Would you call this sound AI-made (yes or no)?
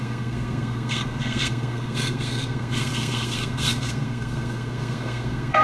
yes